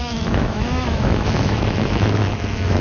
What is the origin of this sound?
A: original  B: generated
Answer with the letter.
B